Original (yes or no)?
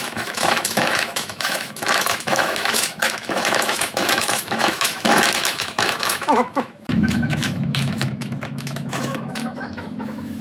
no